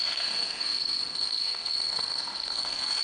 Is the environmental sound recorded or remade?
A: remade